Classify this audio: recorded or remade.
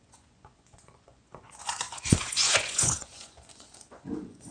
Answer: remade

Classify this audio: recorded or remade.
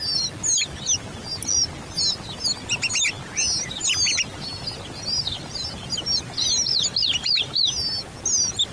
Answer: recorded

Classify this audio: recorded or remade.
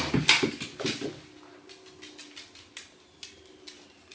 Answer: recorded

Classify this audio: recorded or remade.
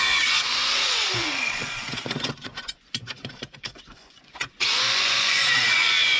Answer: remade